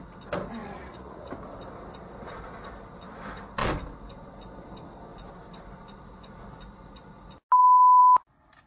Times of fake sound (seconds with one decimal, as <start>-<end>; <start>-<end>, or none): 0.6-1.3